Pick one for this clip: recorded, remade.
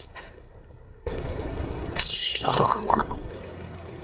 remade